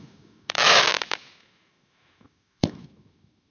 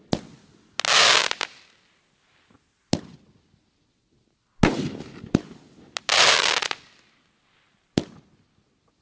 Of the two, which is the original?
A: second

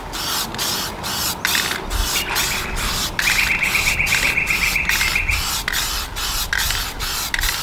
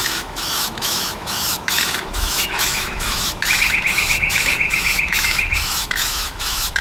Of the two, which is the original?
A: first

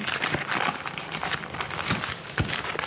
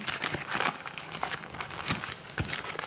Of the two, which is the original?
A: first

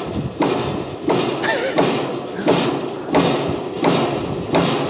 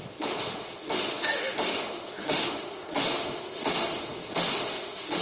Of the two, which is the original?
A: first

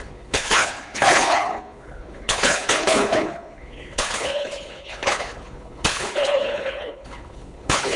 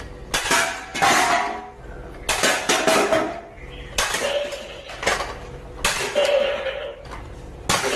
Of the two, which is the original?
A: second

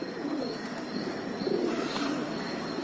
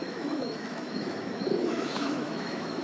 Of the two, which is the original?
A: first